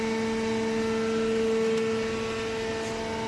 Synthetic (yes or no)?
no